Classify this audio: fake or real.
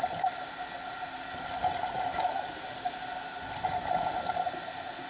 real